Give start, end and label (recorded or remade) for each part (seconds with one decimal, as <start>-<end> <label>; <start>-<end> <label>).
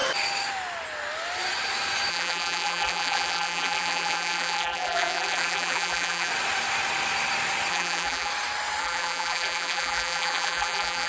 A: 0.0-2.1 recorded; 2.1-6.3 remade; 6.3-7.7 recorded; 7.7-8.3 remade; 8.3-8.8 recorded; 8.8-11.1 remade